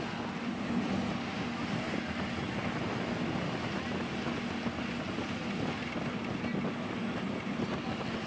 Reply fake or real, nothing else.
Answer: real